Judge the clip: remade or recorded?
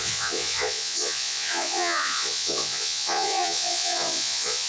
remade